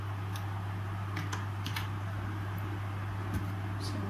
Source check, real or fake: real